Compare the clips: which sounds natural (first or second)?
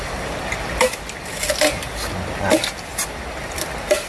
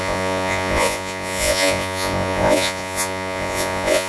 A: first